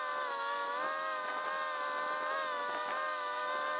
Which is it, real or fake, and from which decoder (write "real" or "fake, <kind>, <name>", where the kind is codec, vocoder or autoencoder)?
real